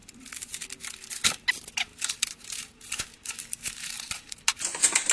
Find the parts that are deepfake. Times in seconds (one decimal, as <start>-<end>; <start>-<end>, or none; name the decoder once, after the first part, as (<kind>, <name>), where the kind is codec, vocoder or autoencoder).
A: 1.9-4.4 (vocoder, BigVGAN v2)